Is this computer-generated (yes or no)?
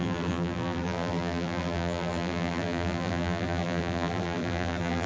yes